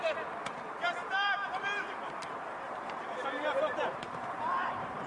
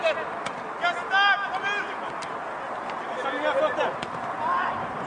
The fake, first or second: first